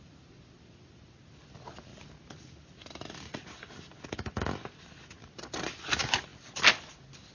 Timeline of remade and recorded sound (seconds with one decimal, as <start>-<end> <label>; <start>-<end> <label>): 0.0-7.3 recorded